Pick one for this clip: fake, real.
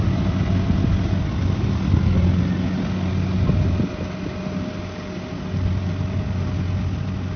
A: real